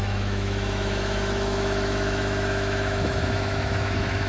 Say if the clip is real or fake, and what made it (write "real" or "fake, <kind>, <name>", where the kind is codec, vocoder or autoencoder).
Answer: fake, autoencoder, DAC-VAE